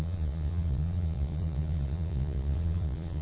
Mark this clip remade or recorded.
remade